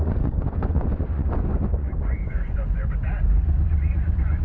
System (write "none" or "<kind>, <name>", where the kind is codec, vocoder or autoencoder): vocoder, Vocos